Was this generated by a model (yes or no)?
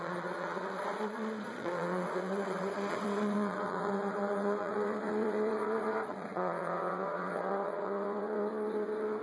yes